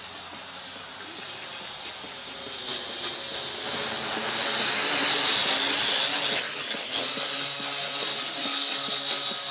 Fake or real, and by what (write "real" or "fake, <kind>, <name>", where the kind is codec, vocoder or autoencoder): real